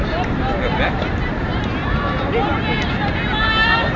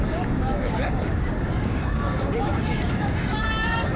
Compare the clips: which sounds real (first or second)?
first